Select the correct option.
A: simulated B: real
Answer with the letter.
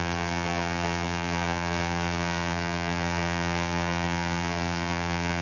A